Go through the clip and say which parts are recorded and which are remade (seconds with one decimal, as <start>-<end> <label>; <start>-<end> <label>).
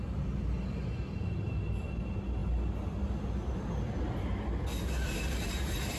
0.0-6.0 recorded